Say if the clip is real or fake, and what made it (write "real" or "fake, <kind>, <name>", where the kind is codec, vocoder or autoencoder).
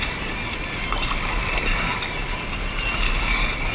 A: real